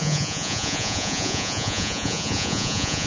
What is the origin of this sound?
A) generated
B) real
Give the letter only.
A